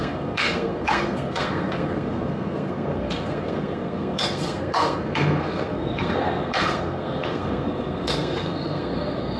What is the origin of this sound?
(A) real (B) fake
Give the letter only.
B